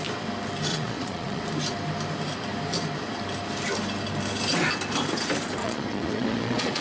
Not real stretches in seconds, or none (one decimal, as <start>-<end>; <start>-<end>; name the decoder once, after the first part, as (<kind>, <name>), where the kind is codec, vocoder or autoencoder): 0.7-1.4 (vocoder, Vocos); 5.6-6.8

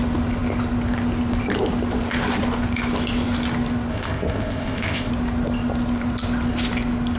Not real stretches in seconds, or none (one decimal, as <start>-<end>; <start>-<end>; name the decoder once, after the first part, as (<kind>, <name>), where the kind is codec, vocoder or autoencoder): 3.9-5.1 (codec, ZipCodec)

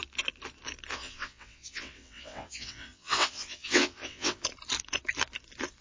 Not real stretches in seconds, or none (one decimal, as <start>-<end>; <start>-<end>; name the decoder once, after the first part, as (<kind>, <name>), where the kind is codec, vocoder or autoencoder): 0.9-4.4 (vocoder, WaveNeXt)

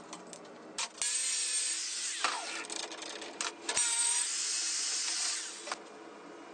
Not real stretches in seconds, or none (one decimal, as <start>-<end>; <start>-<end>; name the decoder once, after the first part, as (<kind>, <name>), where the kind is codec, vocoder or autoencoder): none

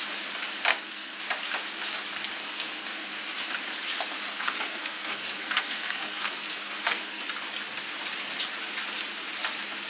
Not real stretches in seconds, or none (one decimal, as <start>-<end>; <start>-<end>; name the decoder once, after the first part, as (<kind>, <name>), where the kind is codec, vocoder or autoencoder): 0.7-1.2 (codec, SNAC); 2.4-3.1; 4.3-7.2

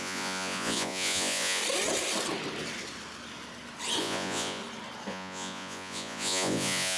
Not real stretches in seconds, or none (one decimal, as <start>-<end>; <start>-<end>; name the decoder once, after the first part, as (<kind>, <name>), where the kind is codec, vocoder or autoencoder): 0.0-1.6 (vocoder, Vocos); 4.0-4.6; 5.1-7.0

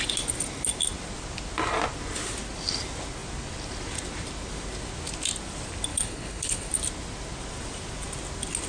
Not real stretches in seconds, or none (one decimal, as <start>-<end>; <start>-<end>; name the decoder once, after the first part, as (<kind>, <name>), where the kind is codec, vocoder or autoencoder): 5.9-6.7 (codec, HILCodec)